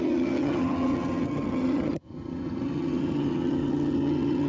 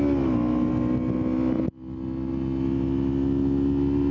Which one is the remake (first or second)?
first